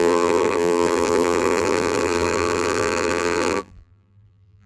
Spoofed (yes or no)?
yes